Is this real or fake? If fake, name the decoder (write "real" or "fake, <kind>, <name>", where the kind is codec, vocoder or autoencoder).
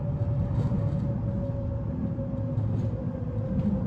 real